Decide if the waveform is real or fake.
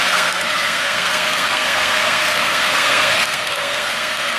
fake